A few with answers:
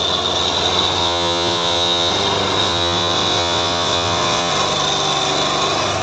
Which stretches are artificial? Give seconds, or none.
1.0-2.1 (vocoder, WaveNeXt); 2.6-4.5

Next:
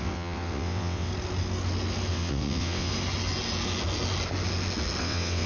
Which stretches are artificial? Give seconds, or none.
0.0-1.1 (vocoder, WaveNeXt); 2.1-2.9; 5.0-5.5

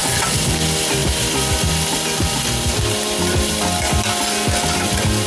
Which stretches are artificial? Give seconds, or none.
0.0-0.5 (vocoder, WaveNeXt)

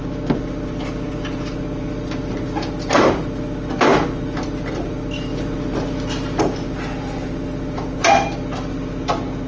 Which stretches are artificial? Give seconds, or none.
none

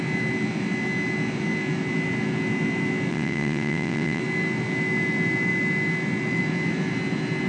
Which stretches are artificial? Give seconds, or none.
3.1-4.2 (vocoder, WaveNeXt)

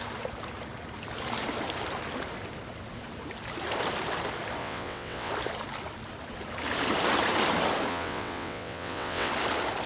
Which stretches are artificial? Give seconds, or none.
4.6-5.3 (vocoder, WaveNeXt); 7.9-9.3

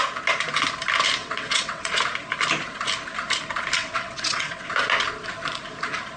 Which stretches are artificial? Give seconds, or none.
1.2-1.9 (vocoder, WaveNeXt); 3.8-4.7